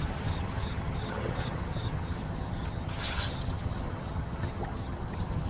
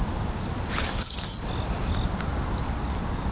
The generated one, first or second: first